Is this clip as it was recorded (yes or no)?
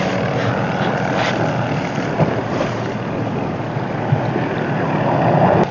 yes